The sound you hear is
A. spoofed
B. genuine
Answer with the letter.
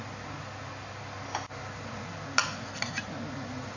B